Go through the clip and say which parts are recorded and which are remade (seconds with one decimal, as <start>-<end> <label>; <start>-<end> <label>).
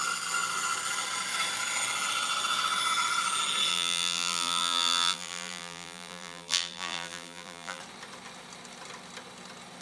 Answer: 0.0-3.7 recorded; 3.7-7.8 remade; 7.8-9.8 recorded